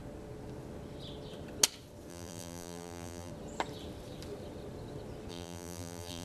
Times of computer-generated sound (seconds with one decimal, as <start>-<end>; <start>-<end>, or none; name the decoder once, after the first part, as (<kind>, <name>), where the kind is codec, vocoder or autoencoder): 2.1-3.3 (vocoder, BigVGAN v2); 5.3-6.2